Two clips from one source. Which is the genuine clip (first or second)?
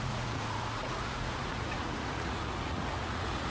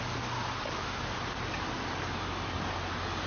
second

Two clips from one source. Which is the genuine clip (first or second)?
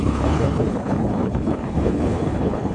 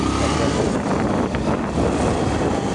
second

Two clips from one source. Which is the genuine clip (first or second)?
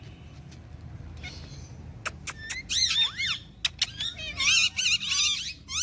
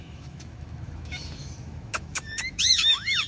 first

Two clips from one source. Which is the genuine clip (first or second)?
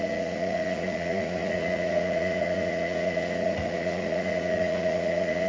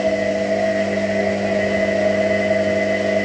second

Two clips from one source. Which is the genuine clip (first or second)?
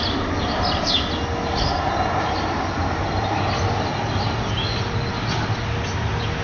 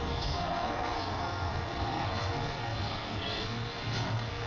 first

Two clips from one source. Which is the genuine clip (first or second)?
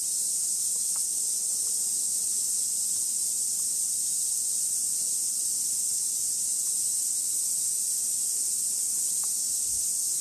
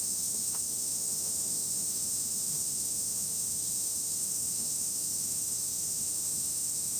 first